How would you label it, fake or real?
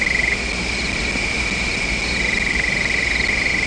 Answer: real